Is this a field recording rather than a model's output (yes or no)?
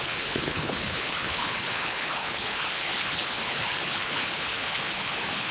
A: no